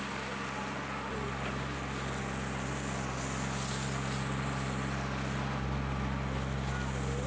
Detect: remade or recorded recorded